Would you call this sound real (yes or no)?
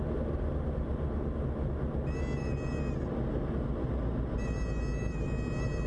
yes